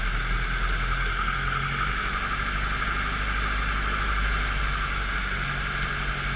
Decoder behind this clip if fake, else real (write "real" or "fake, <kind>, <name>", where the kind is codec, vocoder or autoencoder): real